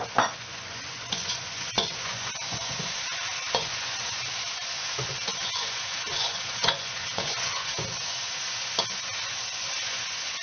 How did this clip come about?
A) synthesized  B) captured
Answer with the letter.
A